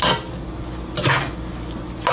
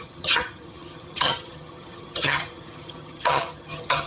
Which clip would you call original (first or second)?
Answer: first